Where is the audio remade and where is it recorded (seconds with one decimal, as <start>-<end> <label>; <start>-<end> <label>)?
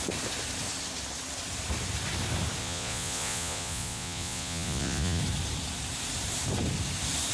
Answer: 0.0-2.6 recorded; 2.6-5.2 remade; 5.2-7.3 recorded